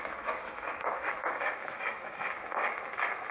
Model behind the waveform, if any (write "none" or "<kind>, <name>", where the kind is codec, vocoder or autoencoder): autoencoder, DAC-VAE